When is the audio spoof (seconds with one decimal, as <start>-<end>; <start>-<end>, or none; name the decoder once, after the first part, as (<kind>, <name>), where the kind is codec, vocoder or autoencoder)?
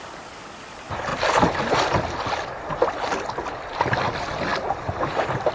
4.5-5.5 (vocoder, BigVGAN v2)